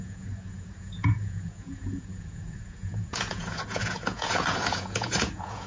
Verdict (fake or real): fake